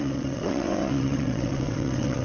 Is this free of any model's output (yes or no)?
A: no